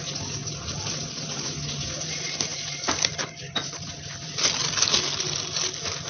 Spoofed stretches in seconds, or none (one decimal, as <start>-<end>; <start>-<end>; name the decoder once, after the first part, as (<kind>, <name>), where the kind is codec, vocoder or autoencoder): 0.4-1.1 (vocoder, BigVGAN v2); 2.5-3.5